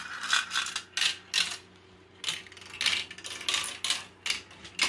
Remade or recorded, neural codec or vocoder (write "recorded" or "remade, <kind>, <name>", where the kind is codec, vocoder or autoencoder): recorded